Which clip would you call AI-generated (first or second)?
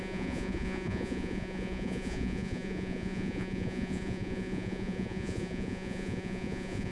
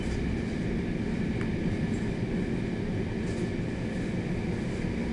first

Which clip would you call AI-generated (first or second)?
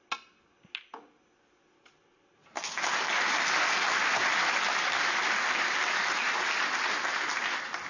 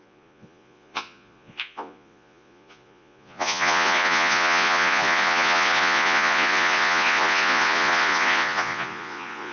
second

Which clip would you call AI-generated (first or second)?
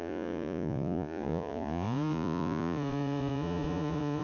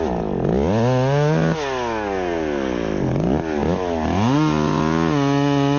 first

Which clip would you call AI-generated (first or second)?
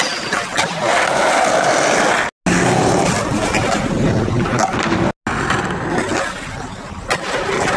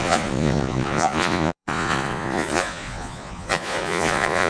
second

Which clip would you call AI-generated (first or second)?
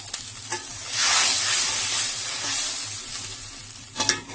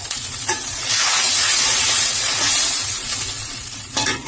second